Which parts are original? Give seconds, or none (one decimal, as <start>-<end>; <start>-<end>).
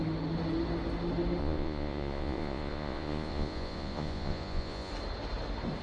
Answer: 0.0-1.4; 4.9-5.8